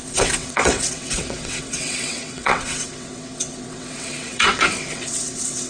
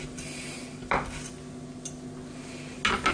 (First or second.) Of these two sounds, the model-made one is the first